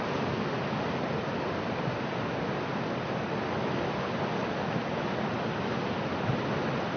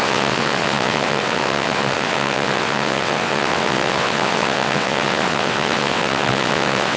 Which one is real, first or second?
first